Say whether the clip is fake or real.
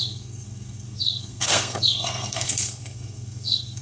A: fake